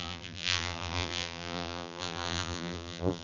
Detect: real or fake fake